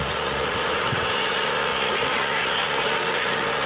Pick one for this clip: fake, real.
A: fake